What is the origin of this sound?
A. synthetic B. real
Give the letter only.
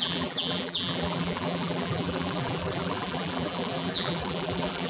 A